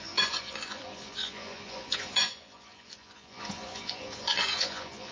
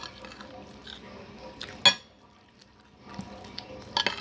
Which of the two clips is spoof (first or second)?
first